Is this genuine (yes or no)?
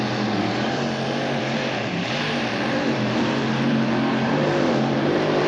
no